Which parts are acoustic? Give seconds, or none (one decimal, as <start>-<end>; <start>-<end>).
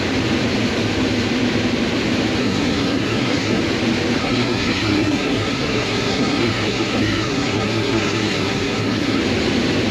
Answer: 0.0-2.4; 3.6-4.2; 9.2-9.9